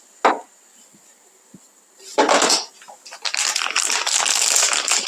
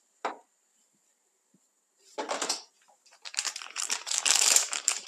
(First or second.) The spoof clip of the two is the second